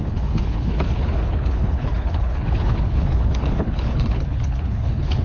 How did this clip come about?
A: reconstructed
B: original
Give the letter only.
A